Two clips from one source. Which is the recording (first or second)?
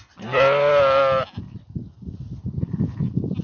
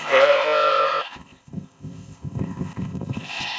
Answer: first